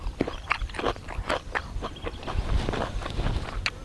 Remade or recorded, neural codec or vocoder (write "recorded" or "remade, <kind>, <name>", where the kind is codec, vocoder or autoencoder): recorded